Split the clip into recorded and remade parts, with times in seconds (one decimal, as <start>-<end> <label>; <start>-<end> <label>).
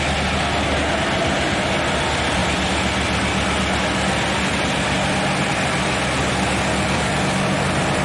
0.0-8.0 recorded